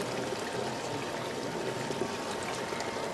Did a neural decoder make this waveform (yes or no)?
no